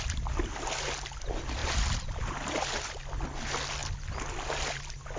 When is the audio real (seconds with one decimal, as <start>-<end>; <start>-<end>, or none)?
0.0-5.2